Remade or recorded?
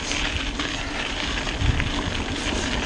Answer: recorded